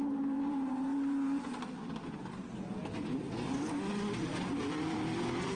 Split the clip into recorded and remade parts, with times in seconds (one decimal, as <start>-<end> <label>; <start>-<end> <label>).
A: 0.0-5.6 recorded